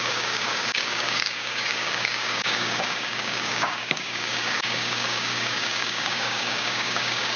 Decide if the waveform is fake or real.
fake